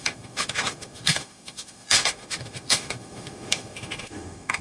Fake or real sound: fake